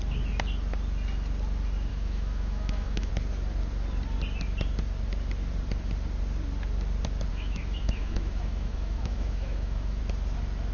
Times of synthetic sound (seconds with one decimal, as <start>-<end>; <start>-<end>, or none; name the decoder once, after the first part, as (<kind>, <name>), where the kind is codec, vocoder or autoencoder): 1.9-3.1 (autoencoder, DAC-VAE); 7.3-10.0